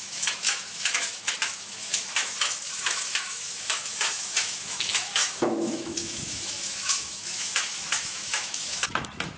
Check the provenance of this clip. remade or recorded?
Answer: remade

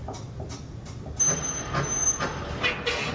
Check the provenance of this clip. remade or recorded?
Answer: recorded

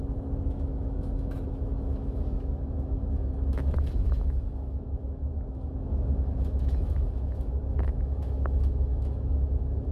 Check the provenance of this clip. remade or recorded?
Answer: remade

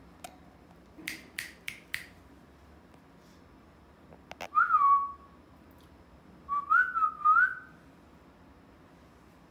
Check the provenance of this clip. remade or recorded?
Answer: recorded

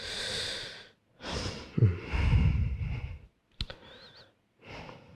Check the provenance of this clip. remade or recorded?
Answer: recorded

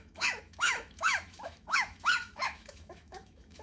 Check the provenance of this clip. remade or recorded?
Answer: remade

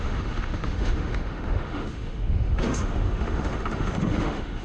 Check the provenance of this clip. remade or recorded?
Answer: remade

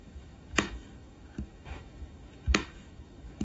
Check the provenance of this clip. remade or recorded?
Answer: remade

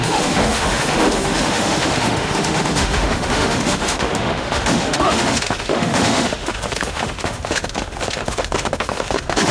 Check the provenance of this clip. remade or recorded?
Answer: remade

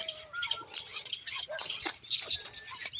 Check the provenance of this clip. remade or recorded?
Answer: recorded